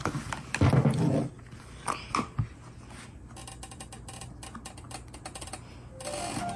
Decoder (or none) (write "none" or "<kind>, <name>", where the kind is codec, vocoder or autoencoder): none